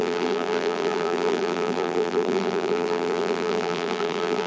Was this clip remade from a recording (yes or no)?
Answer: yes